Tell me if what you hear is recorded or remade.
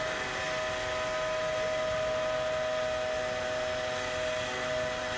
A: recorded